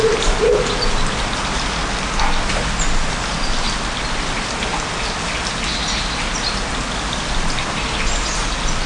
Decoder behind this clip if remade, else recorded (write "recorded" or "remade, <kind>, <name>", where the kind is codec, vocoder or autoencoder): recorded